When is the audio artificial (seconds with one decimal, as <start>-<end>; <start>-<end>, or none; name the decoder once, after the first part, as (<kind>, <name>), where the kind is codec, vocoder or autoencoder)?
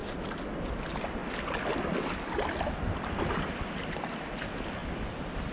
none